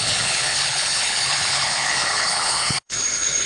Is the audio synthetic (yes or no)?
yes